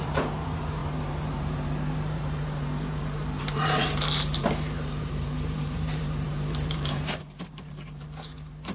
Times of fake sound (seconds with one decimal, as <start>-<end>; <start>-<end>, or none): 0.0-8.7